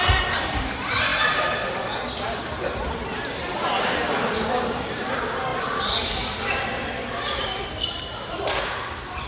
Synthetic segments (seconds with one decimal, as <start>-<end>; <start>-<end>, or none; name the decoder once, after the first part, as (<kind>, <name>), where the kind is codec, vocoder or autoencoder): none